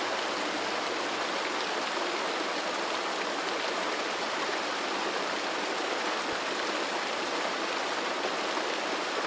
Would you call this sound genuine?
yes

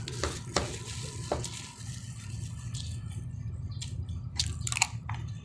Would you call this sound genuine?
yes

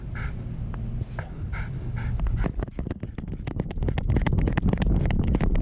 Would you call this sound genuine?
yes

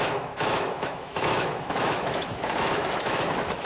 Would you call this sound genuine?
no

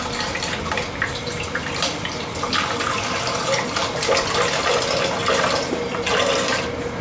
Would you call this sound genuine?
yes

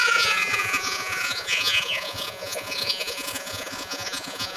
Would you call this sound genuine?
no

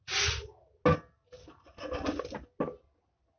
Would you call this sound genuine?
yes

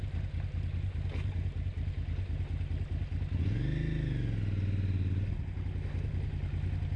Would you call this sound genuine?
yes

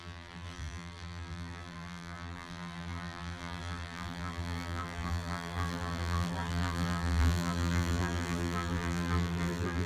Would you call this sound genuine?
no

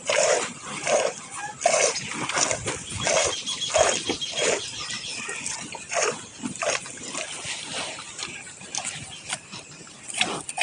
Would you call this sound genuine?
no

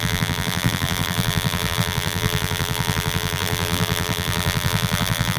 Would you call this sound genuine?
no